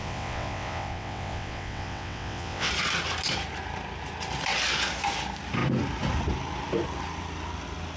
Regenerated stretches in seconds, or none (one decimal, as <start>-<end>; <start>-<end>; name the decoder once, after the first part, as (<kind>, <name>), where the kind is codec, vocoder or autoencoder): 0.0-2.7 (vocoder, WaveNeXt)